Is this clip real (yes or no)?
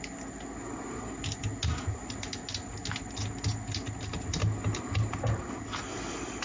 yes